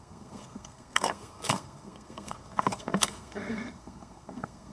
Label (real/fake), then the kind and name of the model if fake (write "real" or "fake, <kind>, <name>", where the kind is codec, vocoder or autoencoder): fake, codec, SNAC